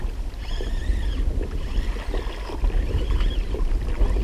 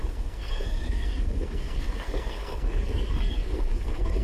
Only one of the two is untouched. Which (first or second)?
first